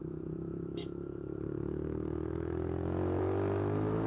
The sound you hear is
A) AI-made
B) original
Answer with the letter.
A